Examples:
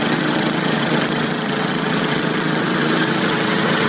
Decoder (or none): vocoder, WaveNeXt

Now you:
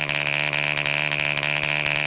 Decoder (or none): none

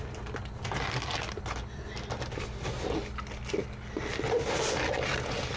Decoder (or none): none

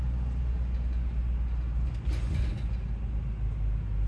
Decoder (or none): none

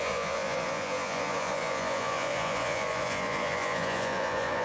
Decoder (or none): vocoder, Vocos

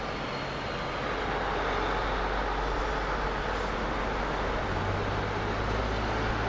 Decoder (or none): none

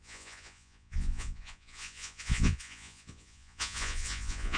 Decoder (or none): vocoder, Vocos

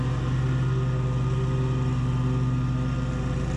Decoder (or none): none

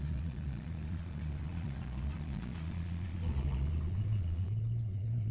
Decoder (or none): vocoder, Vocos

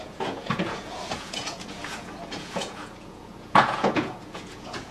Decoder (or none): vocoder, Vocos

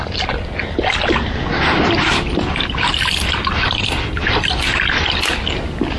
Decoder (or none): none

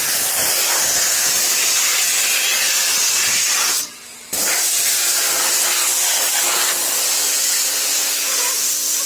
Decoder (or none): none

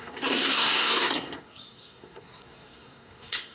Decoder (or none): codec, SNAC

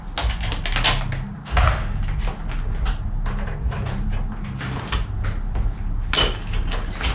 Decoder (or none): none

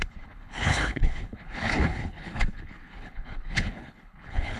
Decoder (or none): codec, HILCodec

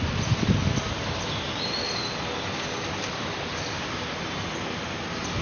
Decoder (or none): none